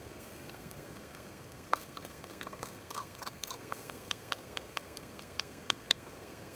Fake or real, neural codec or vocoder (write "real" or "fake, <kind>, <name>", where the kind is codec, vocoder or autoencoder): fake, codec, SNAC